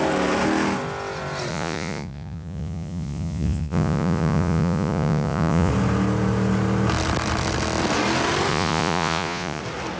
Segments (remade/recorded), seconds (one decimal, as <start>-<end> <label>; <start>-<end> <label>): 0.0-1.5 recorded; 1.5-5.7 remade; 5.7-8.5 recorded; 8.5-9.6 remade; 9.6-10.0 recorded